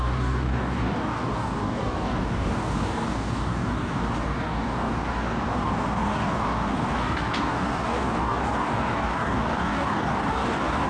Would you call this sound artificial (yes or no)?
yes